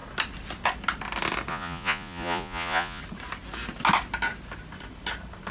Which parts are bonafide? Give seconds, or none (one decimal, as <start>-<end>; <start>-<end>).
0.0-1.5; 3.0-5.5